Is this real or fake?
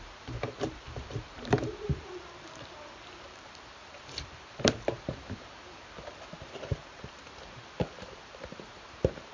fake